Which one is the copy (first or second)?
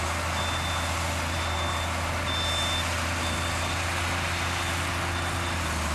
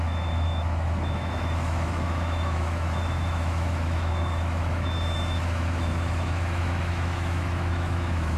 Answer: second